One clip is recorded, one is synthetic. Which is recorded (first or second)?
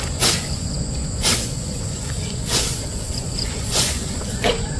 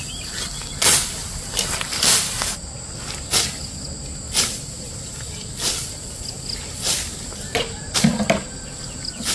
second